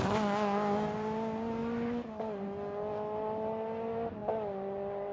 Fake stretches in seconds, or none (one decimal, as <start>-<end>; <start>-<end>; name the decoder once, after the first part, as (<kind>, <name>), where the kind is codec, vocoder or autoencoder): none